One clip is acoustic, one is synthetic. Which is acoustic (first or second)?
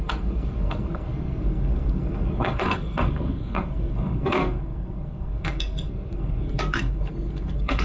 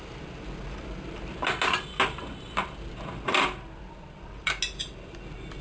second